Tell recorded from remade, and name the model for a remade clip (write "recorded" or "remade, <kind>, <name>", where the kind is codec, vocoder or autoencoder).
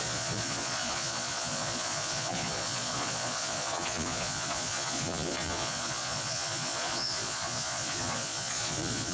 remade, vocoder, Vocos